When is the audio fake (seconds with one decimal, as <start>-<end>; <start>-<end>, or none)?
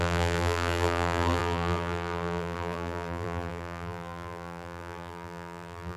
0.0-6.0